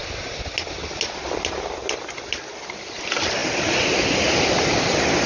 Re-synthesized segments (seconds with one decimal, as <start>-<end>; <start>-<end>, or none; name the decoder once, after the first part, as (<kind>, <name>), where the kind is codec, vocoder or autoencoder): 2.4-3.4 (vocoder, BigVGAN v2); 4.5-5.3